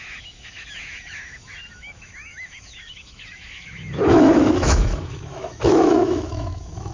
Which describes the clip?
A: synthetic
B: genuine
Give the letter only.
A